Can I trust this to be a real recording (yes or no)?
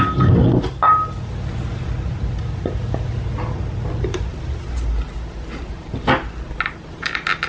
yes